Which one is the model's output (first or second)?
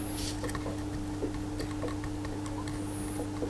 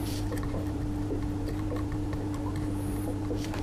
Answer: second